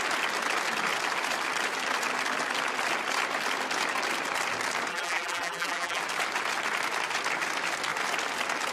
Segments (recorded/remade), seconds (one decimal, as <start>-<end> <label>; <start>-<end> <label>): 0.0-4.9 recorded; 4.9-6.0 remade; 6.0-8.7 recorded